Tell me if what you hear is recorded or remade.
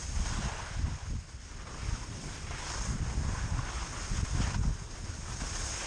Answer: recorded